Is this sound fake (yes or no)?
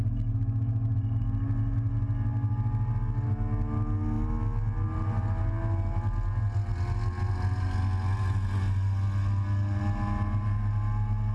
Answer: no